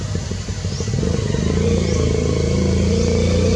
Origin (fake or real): real